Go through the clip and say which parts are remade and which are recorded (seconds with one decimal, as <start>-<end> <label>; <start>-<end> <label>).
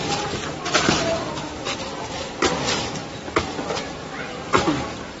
0.0-5.2 recorded